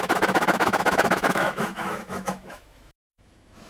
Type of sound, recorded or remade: remade